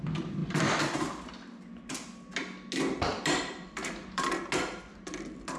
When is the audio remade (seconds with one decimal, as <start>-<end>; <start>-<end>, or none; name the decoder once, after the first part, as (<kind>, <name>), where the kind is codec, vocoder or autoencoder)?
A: 0.4-1.3 (vocoder, BigVGAN v2); 3.1-4.4